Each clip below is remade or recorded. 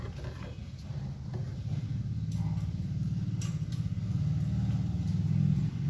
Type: recorded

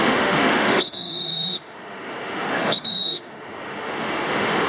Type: remade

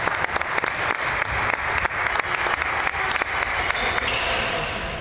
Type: recorded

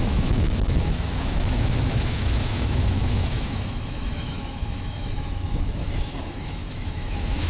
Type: remade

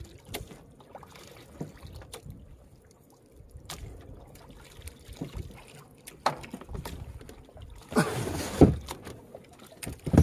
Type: recorded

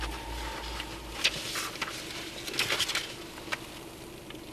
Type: recorded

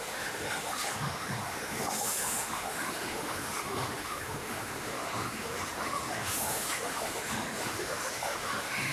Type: remade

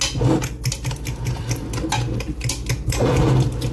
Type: recorded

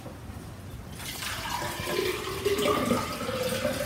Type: recorded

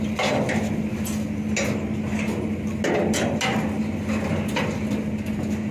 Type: recorded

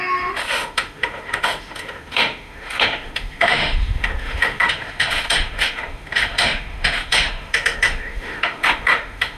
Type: remade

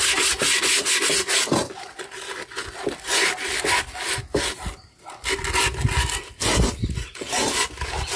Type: recorded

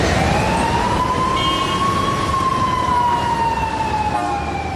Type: recorded